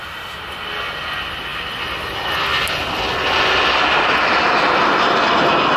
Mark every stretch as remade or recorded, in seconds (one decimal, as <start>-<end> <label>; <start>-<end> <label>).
0.0-5.8 recorded